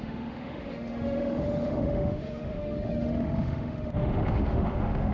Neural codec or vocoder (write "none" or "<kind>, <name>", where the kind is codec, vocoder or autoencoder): autoencoder, DAC-VAE